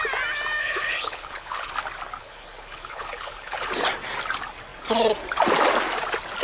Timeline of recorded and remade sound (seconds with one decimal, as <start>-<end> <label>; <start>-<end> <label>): 0.0-0.6 recorded; 0.6-1.7 remade; 1.7-2.2 recorded; 2.2-3.7 remade; 3.7-6.4 recorded